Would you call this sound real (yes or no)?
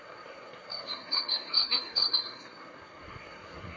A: no